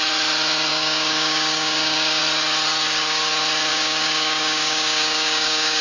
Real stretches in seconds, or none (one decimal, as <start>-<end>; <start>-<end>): 0.0-0.7; 2.2-3.7